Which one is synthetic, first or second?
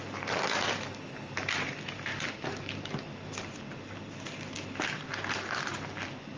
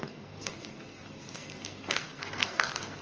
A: second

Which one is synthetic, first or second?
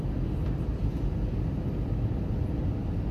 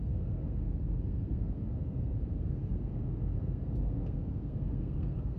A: second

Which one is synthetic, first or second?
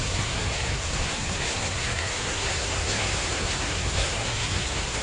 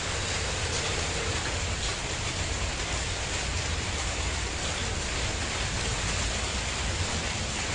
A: first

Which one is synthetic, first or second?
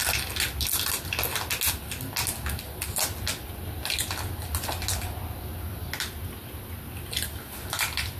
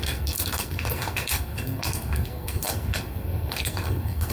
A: second